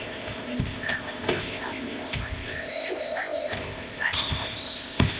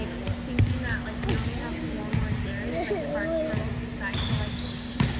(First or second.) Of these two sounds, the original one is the second